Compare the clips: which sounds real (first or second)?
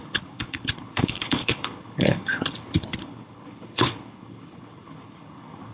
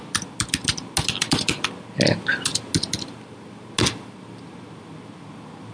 second